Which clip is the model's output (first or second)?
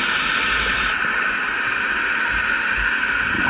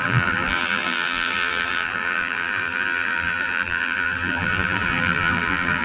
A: second